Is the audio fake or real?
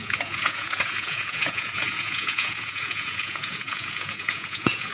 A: fake